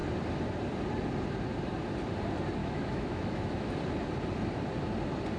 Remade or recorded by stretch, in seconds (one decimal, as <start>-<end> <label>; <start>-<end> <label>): 0.0-2.6 recorded; 2.6-3.7 remade; 3.7-5.4 recorded